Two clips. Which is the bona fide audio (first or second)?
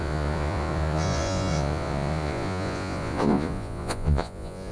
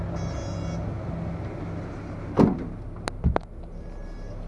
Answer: second